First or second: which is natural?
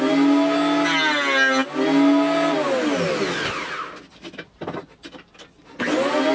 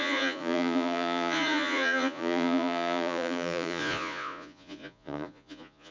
first